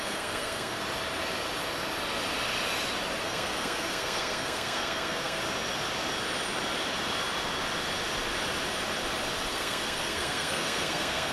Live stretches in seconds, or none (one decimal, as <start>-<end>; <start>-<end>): 0.8-3.2; 5.4-9.5